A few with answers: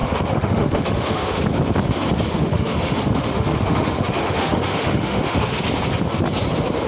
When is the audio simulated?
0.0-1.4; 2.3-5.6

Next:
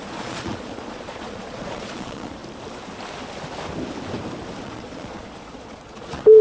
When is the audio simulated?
0.0-2.4; 4.6-6.4

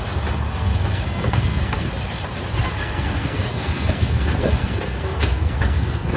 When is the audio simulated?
0.5-1.9; 2.6-6.2

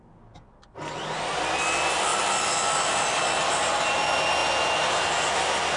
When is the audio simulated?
none

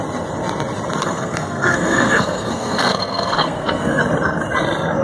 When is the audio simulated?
1.0-4.0

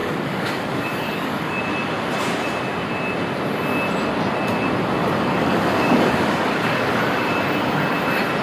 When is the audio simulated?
0.0-1.6; 5.0-7.0

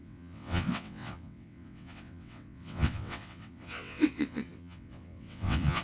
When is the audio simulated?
0.0-5.8